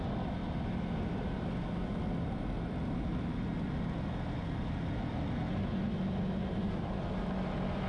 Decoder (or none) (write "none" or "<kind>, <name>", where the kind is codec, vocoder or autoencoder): none